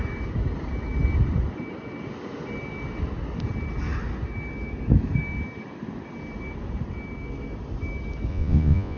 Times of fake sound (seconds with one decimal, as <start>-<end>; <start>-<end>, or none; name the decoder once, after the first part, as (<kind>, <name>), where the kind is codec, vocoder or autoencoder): 8.3-9.0 (vocoder, Vocos)